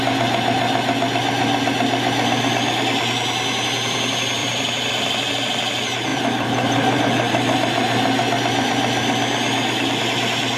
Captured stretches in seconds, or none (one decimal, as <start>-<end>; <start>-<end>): 0.0-4.4; 4.9-6.1; 7.0-10.6